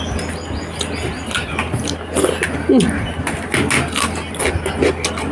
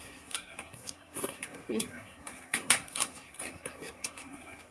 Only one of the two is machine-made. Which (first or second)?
second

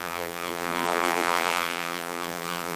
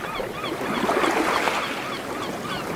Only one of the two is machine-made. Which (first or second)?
first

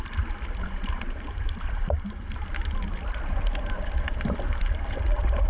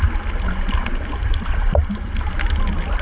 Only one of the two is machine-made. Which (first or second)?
first